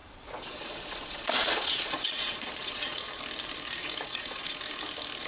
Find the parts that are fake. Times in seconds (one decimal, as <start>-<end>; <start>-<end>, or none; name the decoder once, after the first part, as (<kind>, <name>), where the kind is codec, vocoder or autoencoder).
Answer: 0.0-3.2 (vocoder, Vocos); 3.8-4.6